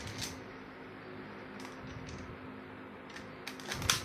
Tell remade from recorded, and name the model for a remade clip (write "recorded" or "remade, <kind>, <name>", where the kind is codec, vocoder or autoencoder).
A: recorded